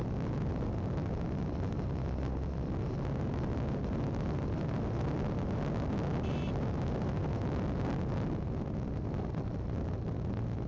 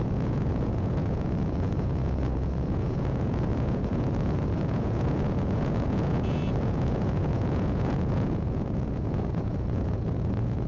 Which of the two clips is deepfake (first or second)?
second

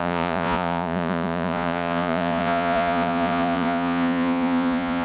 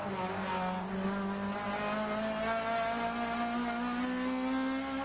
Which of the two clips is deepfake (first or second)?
first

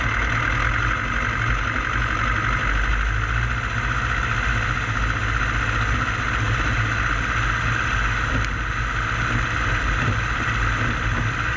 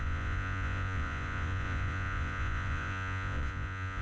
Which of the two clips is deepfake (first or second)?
second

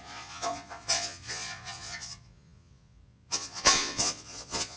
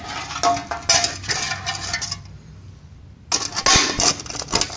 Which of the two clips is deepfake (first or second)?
first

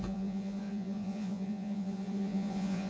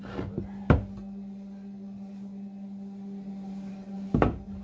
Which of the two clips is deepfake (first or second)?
first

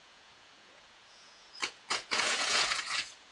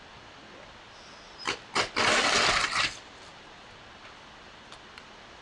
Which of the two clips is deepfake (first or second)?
first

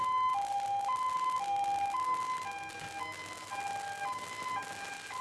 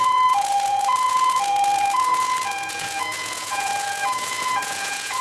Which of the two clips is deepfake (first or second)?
second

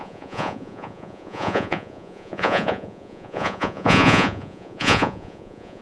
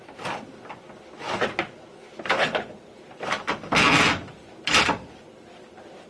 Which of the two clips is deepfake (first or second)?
first